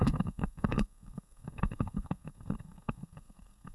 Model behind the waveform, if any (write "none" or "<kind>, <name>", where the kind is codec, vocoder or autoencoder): codec, SNAC